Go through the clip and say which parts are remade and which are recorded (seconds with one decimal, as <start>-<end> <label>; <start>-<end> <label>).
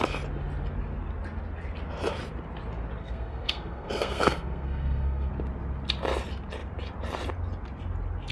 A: 0.0-3.0 recorded; 3.0-5.3 remade; 5.3-8.3 recorded